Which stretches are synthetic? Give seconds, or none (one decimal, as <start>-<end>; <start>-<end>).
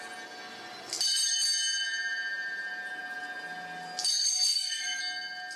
4.1-5.0